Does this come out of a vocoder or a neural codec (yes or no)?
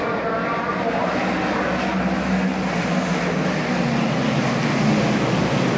no